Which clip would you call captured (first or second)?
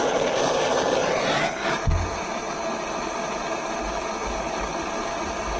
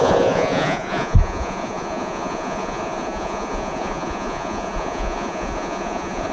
first